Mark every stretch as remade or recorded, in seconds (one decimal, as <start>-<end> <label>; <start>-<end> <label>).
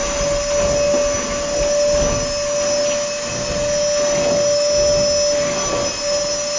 0.0-6.6 recorded